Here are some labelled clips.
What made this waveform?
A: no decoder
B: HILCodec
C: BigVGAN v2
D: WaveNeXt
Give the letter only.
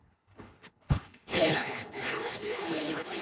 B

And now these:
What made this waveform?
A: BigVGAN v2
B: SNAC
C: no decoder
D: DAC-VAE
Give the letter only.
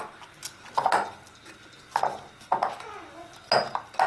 C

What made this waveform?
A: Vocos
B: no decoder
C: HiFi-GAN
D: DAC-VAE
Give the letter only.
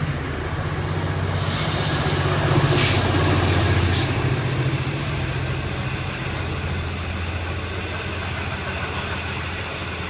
B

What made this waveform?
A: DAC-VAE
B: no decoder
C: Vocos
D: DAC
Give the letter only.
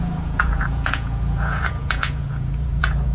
C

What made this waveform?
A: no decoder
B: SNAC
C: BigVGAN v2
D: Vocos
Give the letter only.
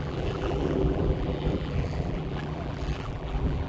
C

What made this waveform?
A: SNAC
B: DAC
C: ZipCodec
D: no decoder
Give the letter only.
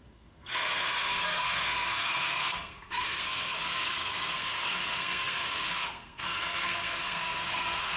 A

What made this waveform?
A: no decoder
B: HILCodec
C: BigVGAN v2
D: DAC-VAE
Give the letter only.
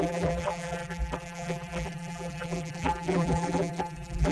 C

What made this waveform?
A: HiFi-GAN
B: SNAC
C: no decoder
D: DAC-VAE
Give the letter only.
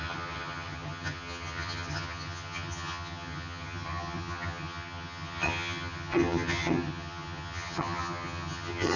A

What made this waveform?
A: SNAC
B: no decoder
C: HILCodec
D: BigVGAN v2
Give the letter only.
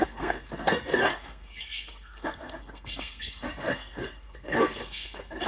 A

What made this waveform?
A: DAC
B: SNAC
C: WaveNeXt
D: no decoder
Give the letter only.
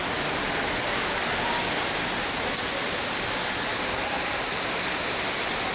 D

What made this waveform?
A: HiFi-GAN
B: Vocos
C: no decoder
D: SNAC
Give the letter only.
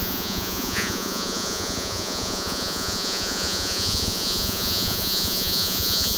B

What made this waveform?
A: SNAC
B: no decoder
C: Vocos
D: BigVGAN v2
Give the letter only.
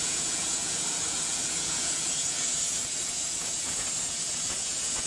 C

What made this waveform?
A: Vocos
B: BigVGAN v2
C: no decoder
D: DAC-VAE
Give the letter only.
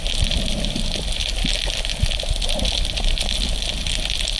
C